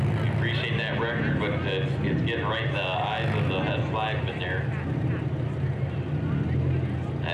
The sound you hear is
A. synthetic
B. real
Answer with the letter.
B